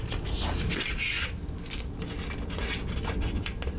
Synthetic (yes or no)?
no